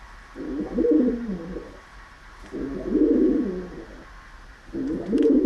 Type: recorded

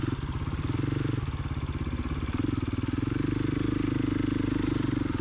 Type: recorded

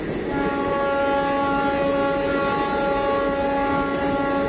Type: recorded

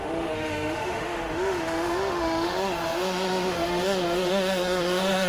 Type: remade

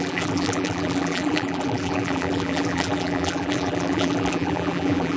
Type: remade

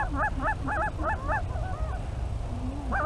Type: recorded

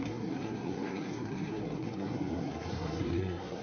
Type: remade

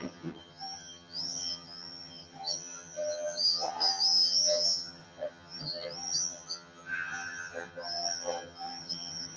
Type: remade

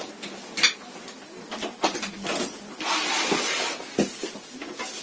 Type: recorded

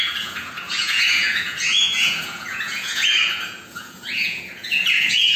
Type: remade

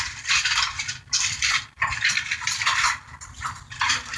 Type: recorded